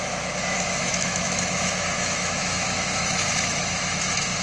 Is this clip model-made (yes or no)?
yes